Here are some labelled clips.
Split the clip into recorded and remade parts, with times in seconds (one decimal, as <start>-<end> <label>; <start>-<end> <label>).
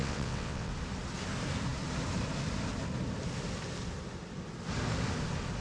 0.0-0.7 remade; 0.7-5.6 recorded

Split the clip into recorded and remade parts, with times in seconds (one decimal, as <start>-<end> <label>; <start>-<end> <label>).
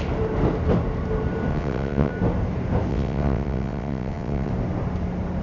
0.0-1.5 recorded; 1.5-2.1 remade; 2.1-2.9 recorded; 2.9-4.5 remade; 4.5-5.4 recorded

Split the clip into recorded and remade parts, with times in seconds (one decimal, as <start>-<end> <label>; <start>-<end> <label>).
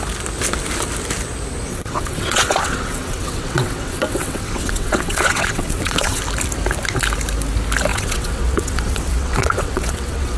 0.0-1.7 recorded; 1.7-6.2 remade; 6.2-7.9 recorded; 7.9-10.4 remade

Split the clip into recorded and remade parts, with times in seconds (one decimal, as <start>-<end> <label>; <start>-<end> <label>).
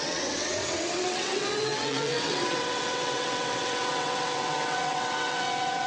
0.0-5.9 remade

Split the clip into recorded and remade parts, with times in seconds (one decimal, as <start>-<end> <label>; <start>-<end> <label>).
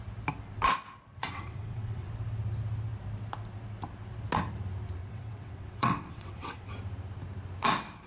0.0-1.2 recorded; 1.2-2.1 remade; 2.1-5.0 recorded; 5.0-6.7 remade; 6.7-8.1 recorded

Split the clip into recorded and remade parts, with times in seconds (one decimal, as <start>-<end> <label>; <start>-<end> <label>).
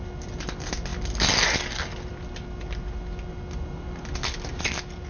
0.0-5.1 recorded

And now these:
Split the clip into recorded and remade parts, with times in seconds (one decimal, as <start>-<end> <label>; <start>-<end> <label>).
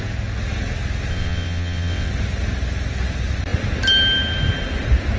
0.0-1.1 recorded; 1.1-2.1 remade; 2.1-5.2 recorded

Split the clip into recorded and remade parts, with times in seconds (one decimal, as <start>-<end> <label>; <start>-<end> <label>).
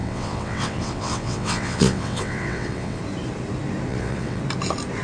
0.0-3.0 remade; 3.0-3.9 recorded; 3.9-4.4 remade; 4.4-5.0 recorded